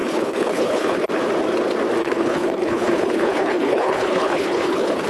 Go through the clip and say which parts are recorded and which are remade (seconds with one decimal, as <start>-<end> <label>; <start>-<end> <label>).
0.0-1.1 remade; 1.1-2.0 recorded; 2.0-5.1 remade